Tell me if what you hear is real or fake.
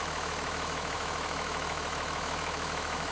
fake